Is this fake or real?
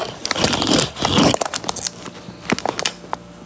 real